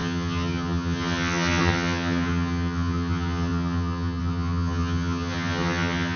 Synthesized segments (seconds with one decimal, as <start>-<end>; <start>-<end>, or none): 0.0-6.2